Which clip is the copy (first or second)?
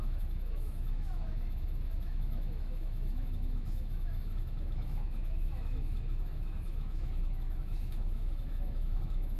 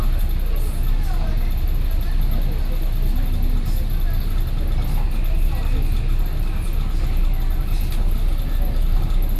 first